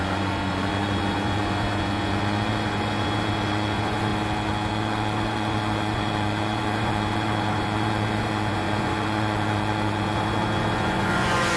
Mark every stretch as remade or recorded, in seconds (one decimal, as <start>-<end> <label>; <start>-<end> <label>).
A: 0.0-4.1 remade; 4.1-4.7 recorded; 4.7-11.6 remade

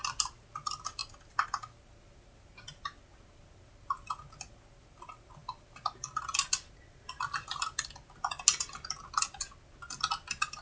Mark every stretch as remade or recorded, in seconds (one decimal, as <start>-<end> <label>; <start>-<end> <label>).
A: 0.0-10.6 recorded

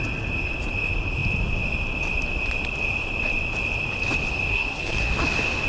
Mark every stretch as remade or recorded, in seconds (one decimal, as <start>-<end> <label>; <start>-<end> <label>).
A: 0.0-4.5 recorded; 4.5-5.1 remade; 5.1-5.7 recorded

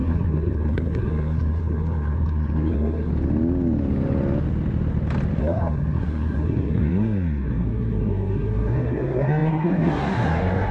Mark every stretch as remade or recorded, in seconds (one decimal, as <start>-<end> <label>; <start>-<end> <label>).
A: 0.0-3.1 remade; 3.1-5.4 recorded; 5.4-10.7 remade

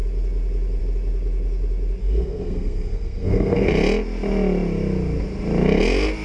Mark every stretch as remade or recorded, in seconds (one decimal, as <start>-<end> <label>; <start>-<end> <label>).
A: 0.0-2.0 recorded; 2.0-3.7 remade; 3.7-6.2 recorded